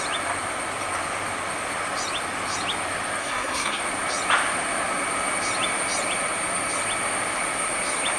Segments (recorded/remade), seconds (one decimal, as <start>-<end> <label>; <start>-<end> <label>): 0.0-3.2 recorded; 3.2-3.8 remade; 3.8-8.2 recorded